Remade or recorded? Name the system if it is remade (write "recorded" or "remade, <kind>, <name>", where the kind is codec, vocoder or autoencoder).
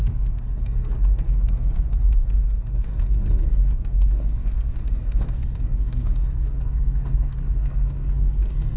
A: remade, codec, SNAC